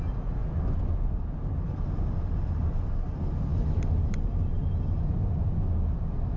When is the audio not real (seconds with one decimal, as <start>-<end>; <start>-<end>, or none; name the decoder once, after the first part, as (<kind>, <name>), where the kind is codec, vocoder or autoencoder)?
none